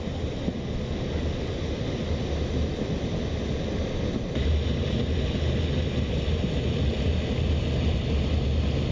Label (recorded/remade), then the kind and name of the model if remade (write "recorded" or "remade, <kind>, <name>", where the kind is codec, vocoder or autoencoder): recorded